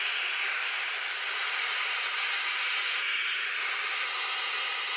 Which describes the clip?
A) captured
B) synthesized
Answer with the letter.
A